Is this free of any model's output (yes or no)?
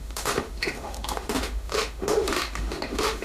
no